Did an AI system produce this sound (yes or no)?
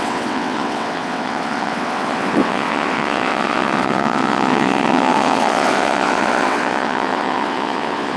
yes